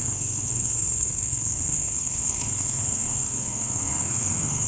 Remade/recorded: remade